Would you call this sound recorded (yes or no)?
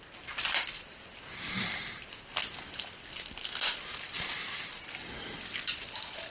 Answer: yes